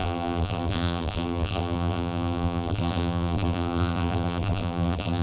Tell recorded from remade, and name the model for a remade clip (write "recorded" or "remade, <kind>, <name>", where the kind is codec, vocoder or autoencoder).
remade, vocoder, BigVGAN v2